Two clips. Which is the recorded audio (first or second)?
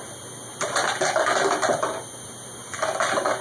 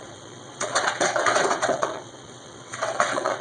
first